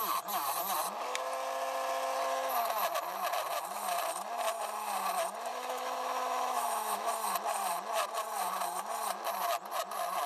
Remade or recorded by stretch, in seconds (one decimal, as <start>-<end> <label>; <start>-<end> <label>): 0.0-5.5 recorded; 5.5-7.1 remade; 7.1-10.3 recorded